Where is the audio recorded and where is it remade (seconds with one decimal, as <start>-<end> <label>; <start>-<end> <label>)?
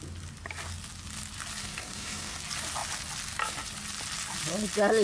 0.0-1.6 recorded; 1.6-2.4 remade; 2.4-5.0 recorded